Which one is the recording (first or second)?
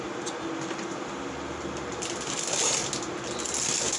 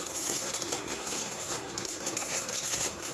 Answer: first